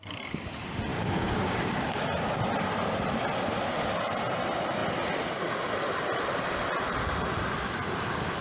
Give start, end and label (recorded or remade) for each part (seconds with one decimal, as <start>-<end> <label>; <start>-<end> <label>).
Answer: 0.0-0.9 recorded; 0.9-2.0 remade; 2.0-8.4 recorded